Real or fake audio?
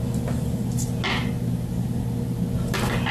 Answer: real